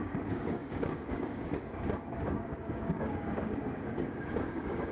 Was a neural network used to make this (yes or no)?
yes